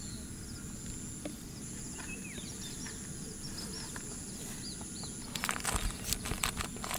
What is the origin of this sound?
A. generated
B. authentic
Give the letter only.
B